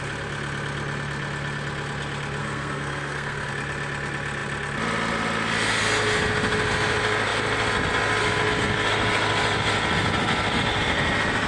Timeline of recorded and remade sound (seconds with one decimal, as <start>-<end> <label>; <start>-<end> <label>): 0.0-2.4 recorded; 2.4-3.5 remade; 3.5-11.5 recorded